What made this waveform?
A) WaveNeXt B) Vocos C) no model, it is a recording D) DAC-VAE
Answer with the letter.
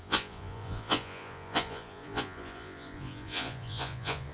B